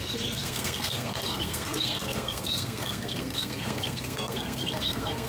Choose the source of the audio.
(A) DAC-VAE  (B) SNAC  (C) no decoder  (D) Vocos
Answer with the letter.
B